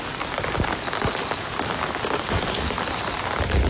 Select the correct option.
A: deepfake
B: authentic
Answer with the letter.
B